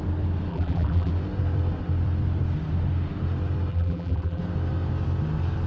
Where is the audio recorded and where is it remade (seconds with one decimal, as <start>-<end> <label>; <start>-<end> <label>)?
0.0-0.5 recorded; 0.5-1.1 remade; 1.1-3.7 recorded; 3.7-4.4 remade; 4.4-5.7 recorded